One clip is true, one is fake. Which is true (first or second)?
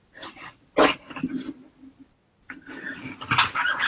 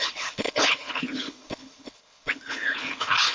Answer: first